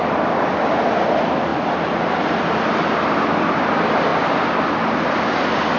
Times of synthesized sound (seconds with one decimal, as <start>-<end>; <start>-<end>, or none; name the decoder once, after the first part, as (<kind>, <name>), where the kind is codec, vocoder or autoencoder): 0.0-5.8 (vocoder, BigVGAN v2)